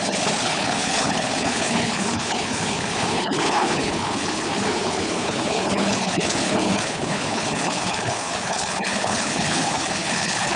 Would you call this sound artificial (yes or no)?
yes